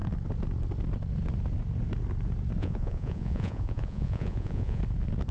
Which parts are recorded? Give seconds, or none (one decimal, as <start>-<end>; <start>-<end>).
0.0-2.6; 4.8-5.3